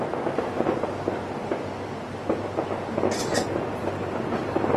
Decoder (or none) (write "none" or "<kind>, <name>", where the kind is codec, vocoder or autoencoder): none